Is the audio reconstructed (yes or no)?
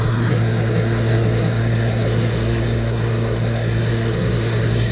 yes